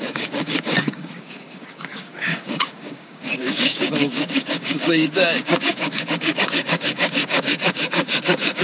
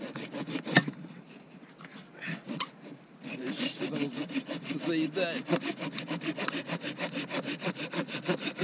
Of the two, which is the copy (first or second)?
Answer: first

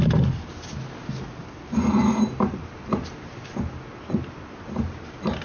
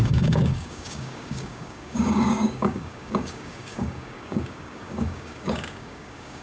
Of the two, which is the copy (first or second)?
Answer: second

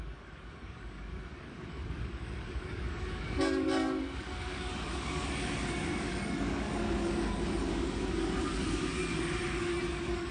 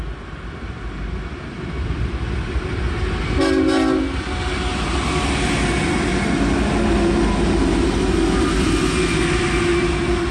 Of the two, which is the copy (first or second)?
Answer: first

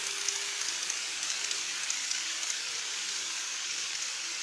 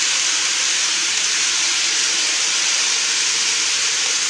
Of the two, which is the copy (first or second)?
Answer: first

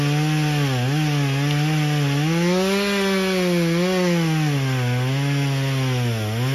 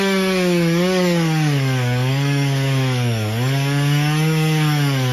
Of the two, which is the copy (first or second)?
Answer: second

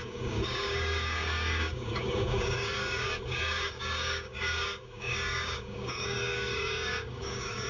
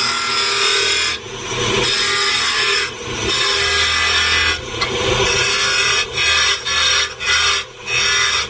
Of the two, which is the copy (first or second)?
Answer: first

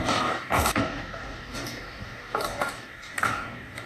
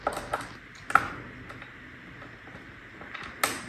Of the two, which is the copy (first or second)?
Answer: first